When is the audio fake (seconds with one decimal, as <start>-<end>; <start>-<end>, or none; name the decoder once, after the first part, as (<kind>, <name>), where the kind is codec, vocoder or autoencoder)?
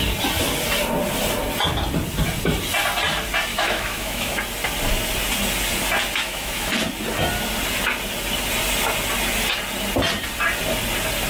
3.5-4.4 (autoencoder, DAC-VAE); 6.2-6.7